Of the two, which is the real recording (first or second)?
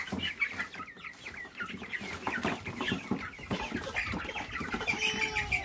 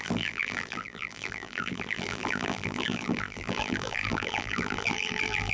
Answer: first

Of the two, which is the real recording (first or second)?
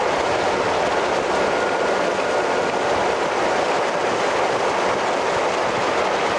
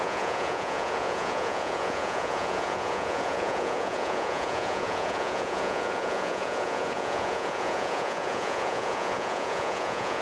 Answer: first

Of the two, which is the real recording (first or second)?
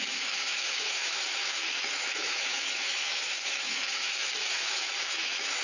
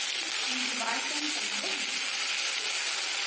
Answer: second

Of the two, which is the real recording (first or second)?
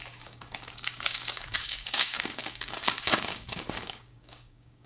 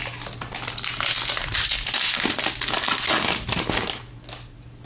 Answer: second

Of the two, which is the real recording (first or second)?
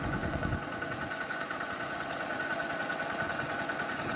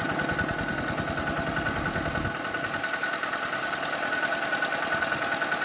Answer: second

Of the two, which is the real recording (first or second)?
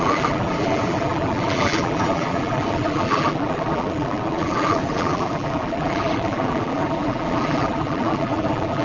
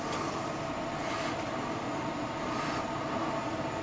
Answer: second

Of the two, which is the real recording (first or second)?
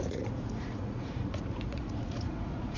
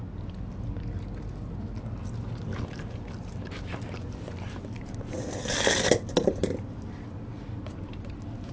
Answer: second